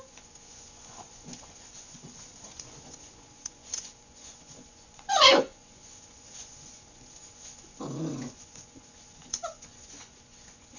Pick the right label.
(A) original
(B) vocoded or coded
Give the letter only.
B